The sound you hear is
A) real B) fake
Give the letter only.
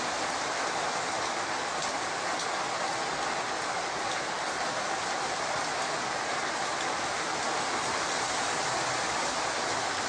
A